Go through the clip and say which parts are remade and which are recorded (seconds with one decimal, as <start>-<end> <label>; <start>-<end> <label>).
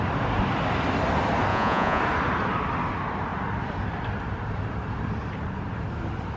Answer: 0.0-1.5 recorded; 1.5-2.0 remade; 2.0-6.4 recorded